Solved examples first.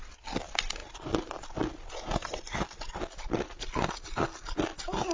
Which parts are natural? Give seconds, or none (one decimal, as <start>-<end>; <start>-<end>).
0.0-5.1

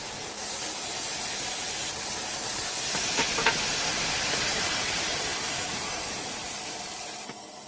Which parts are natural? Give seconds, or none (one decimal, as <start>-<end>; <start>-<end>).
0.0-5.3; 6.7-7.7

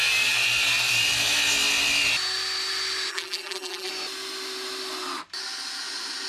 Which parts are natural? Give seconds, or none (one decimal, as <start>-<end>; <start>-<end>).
0.0-3.1; 3.9-6.3

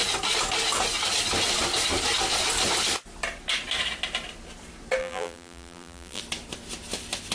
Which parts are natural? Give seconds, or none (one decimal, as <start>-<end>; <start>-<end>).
0.0-5.0; 6.2-7.3